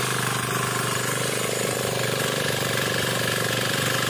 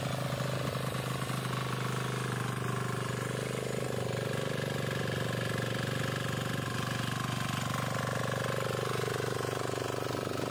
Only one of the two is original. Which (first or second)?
second